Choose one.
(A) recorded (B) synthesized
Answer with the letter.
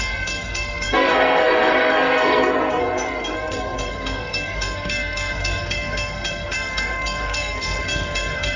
B